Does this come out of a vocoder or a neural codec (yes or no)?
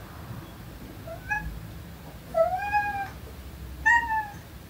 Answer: no